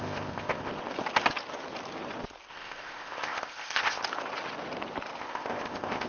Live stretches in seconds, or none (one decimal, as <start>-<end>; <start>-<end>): 0.7-2.5; 4.0-5.2